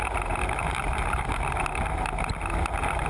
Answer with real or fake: real